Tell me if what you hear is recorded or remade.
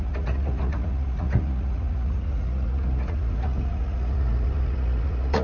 remade